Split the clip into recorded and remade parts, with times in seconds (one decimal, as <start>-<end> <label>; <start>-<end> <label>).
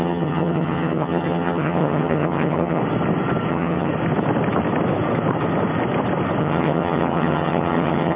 0.0-2.8 remade; 2.8-3.5 recorded; 3.5-3.9 remade; 3.9-6.4 recorded; 6.4-8.2 remade